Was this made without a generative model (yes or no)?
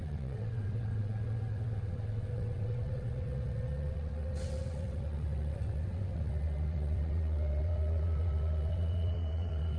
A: no